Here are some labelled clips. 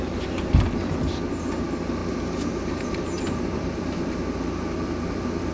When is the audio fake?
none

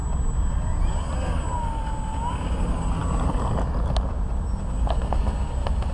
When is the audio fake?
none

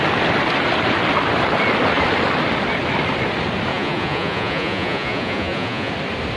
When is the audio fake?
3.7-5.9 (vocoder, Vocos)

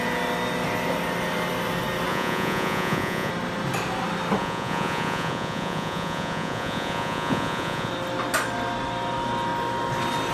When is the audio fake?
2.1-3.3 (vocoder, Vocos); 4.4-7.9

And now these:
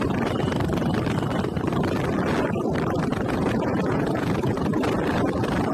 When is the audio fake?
3.1-4.8 (vocoder, Vocos)

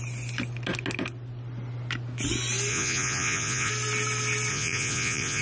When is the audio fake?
2.7-3.7 (vocoder, Vocos); 4.5-5.4